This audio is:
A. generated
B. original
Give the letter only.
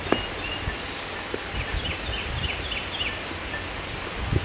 B